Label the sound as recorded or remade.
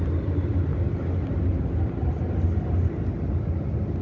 recorded